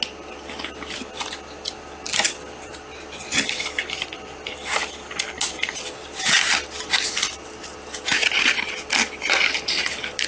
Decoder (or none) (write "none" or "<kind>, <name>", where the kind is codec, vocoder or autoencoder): none